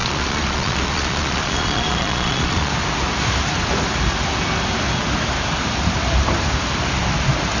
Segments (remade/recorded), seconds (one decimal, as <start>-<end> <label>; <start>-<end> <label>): 0.0-2.7 remade; 2.7-7.6 recorded